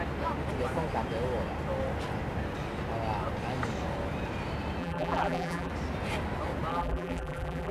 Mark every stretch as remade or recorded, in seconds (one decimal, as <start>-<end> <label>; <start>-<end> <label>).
0.0-4.8 recorded; 4.8-5.7 remade; 5.7-6.7 recorded; 6.7-7.7 remade